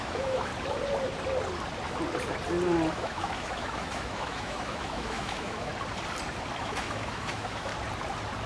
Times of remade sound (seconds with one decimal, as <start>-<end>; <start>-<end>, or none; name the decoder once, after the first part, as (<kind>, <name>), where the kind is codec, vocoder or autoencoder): 0.0-0.5 (autoencoder, DAC-VAE); 2.9-5.7; 6.6-7.7